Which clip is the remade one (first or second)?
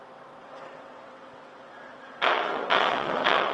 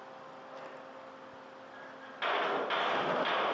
first